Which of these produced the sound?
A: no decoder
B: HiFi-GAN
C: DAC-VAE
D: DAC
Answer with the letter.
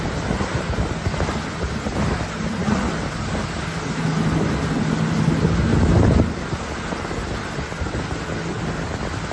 A